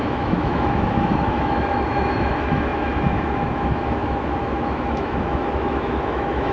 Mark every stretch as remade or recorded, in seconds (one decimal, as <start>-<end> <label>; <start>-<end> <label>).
0.0-6.5 remade